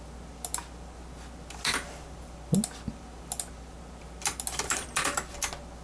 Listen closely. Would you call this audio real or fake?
real